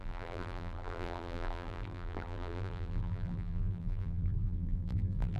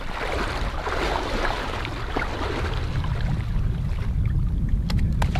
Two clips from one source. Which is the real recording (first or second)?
second